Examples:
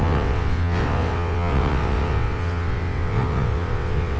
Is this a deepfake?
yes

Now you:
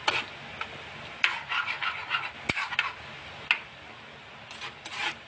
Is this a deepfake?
no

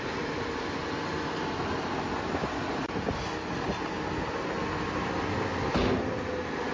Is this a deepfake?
no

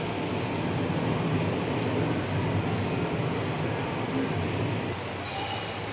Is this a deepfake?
no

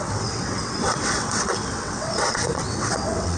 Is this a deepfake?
yes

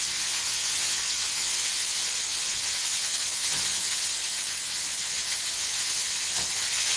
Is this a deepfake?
yes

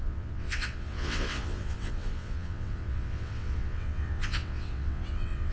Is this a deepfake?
yes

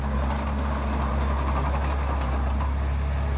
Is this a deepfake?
no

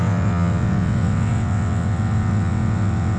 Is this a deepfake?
yes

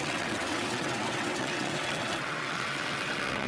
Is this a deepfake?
yes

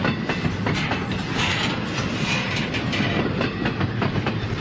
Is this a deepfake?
no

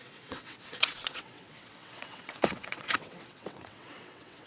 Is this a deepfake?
yes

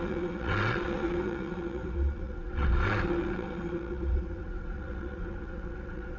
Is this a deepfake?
yes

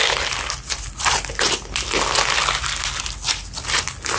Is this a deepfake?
no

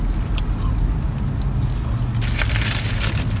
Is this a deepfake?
no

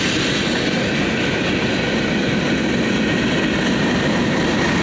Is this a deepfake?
no